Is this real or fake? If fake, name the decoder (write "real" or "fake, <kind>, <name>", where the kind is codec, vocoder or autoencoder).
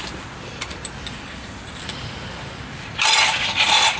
fake, vocoder, BigVGAN v2